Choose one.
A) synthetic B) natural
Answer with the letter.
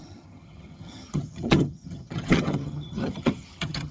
A